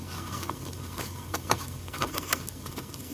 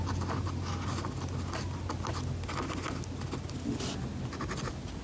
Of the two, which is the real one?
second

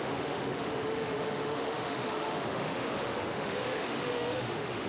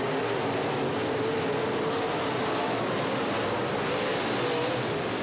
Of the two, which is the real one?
second